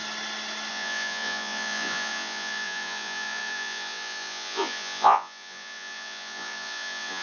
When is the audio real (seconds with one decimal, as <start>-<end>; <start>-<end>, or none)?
0.0-0.7